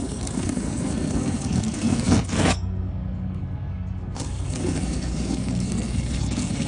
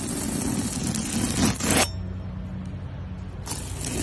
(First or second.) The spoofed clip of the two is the first